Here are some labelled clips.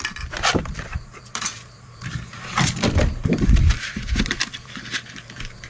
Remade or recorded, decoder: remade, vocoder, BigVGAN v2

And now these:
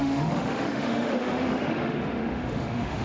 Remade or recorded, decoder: remade, autoencoder, DAC-VAE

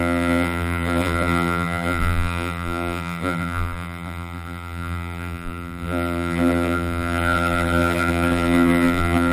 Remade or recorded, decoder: remade, vocoder, BigVGAN v2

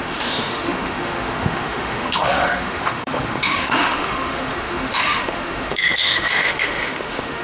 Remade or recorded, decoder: remade, autoencoder, DAC-VAE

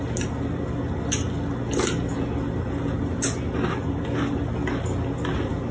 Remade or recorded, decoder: recorded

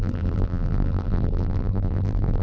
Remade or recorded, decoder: remade, vocoder, BigVGAN v2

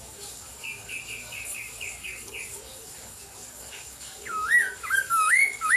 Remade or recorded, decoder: remade, codec, DAC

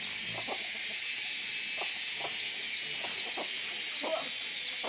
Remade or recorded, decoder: recorded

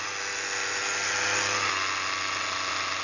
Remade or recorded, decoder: recorded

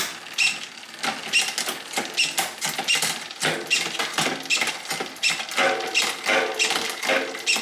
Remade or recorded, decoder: recorded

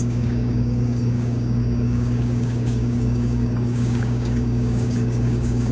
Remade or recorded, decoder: remade, codec, DAC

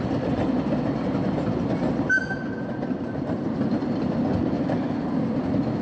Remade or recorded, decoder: recorded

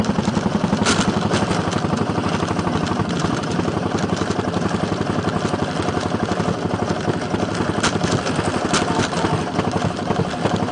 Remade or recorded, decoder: recorded